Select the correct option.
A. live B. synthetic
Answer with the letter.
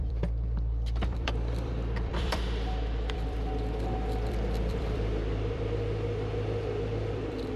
B